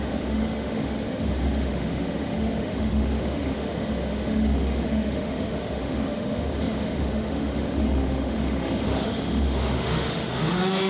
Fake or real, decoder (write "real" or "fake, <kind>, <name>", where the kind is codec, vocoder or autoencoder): fake, autoencoder, DAC-VAE